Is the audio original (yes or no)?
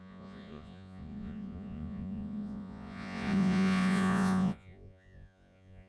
no